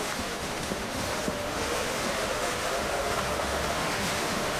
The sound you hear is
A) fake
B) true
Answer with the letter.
A